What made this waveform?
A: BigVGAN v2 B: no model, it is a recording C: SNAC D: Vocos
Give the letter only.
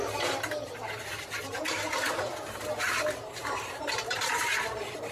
A